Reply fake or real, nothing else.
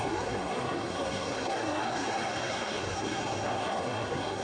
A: fake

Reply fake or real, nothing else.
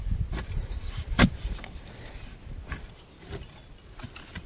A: real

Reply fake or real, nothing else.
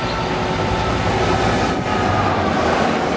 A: real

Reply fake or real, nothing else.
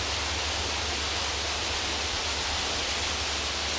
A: real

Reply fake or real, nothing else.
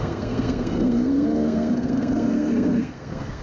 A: fake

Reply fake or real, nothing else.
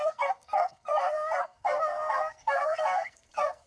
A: fake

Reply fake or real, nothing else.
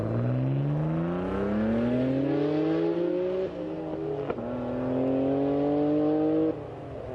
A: real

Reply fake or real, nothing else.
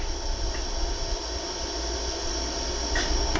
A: real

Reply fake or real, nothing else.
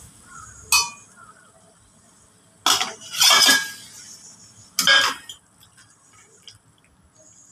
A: real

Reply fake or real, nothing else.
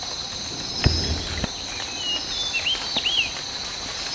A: real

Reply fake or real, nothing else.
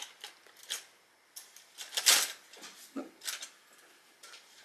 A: real